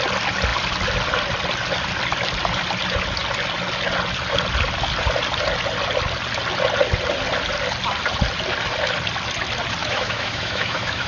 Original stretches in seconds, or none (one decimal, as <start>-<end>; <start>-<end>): 0.0-9.8